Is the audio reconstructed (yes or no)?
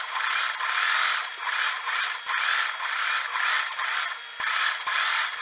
no